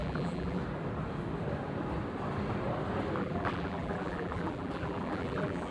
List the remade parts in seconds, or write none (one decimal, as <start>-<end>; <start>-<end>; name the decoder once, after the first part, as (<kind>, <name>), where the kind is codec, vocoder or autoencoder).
0.0-0.6 (vocoder, BigVGAN v2); 3.2-5.7